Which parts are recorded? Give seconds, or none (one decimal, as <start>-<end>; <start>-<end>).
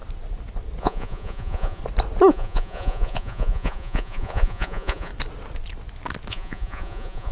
0.0-0.8; 1.8-2.3; 5.1-6.3